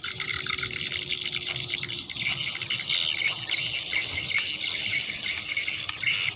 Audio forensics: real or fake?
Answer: real